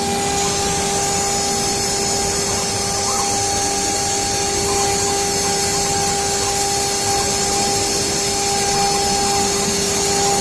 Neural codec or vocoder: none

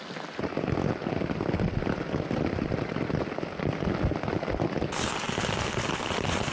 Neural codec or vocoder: none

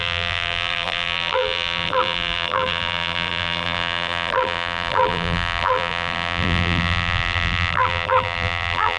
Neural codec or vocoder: vocoder, BigVGAN v2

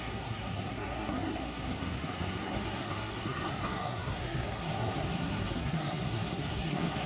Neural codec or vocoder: codec, SNAC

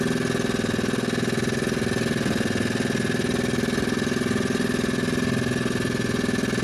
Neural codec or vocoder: none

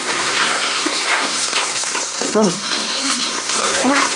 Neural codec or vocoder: codec, SNAC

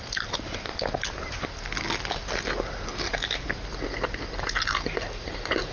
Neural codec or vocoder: none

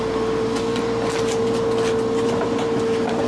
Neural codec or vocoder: none